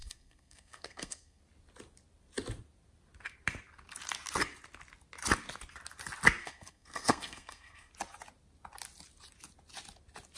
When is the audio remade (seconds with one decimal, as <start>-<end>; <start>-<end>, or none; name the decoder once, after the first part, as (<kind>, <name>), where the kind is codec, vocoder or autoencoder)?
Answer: 0.0-1.4 (codec, SNAC); 6.4-7.9